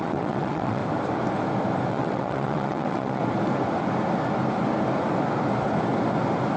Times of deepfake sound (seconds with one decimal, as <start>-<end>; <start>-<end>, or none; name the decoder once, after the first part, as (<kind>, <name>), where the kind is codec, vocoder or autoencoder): 0.0-0.8 (vocoder, WaveNeXt); 1.9-3.2

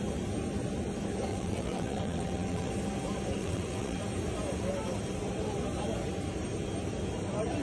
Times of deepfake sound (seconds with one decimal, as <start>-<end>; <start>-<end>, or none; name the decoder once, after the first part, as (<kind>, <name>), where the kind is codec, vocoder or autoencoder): 1.3-2.7 (vocoder, WaveNeXt); 3.4-4.0

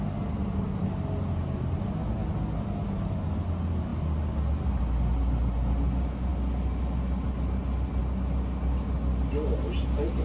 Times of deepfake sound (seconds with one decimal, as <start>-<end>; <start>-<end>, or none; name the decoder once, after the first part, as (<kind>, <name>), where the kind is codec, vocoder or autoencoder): none

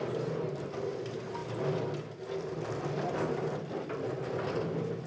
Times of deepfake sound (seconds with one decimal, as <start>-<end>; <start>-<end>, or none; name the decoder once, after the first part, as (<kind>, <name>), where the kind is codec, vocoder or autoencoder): none